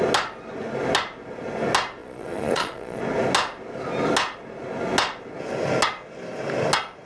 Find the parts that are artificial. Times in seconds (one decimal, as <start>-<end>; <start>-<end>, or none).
2.0-3.0